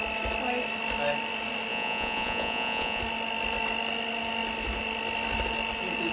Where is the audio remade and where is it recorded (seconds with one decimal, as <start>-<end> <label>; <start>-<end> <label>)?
0.0-1.7 recorded; 1.7-3.0 remade; 3.0-6.1 recorded